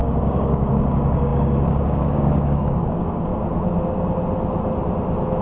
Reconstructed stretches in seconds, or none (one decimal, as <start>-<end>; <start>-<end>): 0.0-3.3

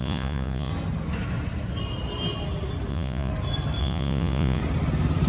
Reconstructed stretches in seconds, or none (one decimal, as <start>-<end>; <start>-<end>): 0.0-0.7; 2.9-3.3; 3.8-4.6

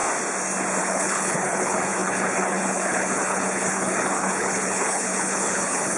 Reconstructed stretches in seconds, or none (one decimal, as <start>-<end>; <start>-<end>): 0.8-6.0

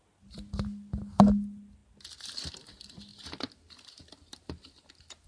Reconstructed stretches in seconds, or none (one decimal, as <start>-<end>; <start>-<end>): none

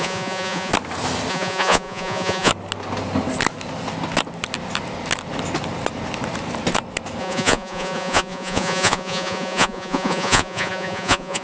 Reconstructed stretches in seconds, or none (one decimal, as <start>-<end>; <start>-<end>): 0.0-0.7; 1.3-2.5; 7.2-11.4

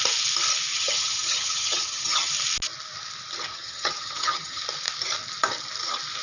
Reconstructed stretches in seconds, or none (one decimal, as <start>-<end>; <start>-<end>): 0.7-2.3; 3.5-4.6

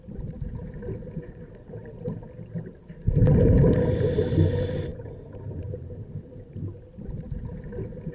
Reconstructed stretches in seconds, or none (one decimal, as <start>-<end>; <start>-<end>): none